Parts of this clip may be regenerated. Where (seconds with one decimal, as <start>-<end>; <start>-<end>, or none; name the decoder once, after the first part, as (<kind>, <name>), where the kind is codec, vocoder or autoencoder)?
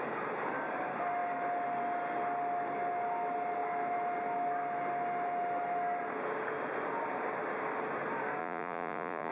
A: 8.4-9.3 (vocoder, Vocos)